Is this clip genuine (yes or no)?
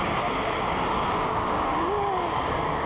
no